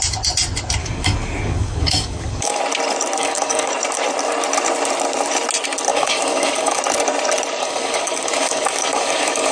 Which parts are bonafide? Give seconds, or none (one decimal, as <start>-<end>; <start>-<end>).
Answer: 0.0-0.8; 2.6-3.2; 3.7-5.9; 6.8-7.6